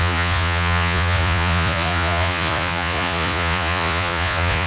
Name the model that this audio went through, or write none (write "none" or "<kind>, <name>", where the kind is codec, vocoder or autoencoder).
vocoder, Vocos